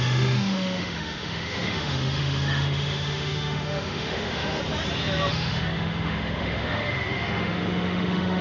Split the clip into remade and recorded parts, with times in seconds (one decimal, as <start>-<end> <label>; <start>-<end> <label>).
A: 0.0-4.6 remade; 4.6-5.3 recorded; 5.3-8.4 remade